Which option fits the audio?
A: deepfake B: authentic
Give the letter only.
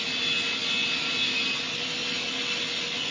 B